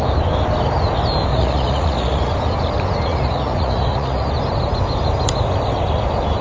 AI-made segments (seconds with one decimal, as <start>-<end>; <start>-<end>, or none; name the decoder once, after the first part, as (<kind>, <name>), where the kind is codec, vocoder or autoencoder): 1.3-2.3 (vocoder, Vocos); 3.1-4.3